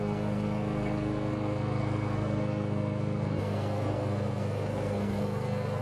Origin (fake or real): fake